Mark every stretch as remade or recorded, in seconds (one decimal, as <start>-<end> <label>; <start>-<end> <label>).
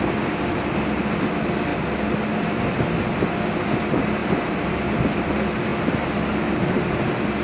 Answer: 0.0-7.4 recorded